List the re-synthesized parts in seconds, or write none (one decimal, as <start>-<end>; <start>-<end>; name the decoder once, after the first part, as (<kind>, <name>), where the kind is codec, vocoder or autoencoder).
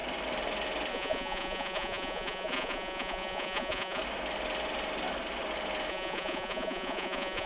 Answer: 0.9-4.0 (vocoder, Vocos); 5.9-7.5